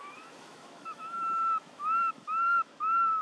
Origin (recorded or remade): remade